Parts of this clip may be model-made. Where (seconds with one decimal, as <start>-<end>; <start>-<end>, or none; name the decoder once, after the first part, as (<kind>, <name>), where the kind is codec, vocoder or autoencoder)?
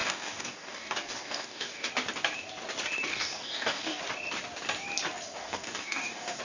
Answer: 0.0-1.9 (codec, DAC); 3.1-4.0; 5.4-6.4